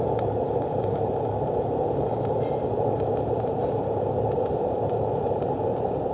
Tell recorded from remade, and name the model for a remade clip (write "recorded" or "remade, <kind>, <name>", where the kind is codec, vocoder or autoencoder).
remade, vocoder, BigVGAN v2